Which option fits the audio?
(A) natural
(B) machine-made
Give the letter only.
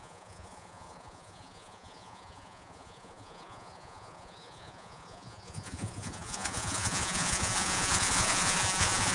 B